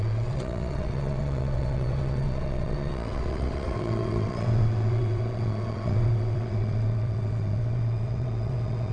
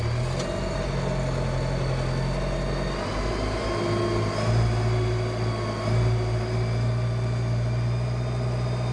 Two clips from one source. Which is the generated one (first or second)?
first